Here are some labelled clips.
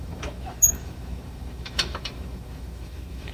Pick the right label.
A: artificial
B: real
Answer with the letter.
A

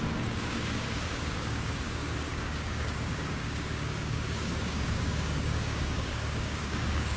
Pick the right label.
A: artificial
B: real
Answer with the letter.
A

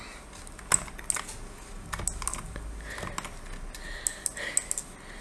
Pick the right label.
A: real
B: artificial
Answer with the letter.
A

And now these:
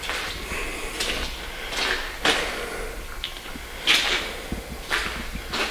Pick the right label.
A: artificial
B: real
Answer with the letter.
B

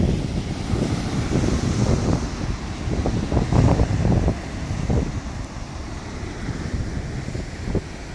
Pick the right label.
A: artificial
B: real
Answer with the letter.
B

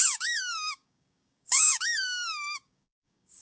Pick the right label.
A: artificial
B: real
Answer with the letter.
A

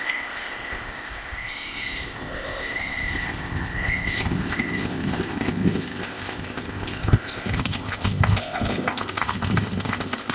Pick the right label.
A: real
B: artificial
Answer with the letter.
B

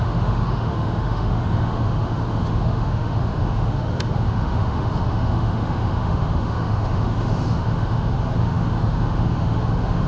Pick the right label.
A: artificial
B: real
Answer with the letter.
A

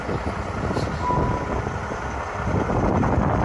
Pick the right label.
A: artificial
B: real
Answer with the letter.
B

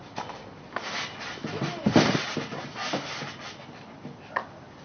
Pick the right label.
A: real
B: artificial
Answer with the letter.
A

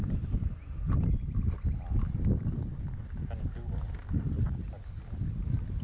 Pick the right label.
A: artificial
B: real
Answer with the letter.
B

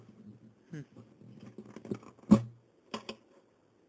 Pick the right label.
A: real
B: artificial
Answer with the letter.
A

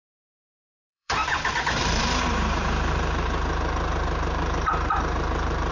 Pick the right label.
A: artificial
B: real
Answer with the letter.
A